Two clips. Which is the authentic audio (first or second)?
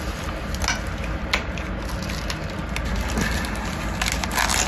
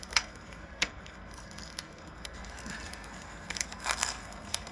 first